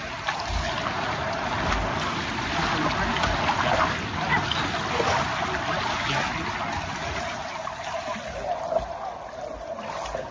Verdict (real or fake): real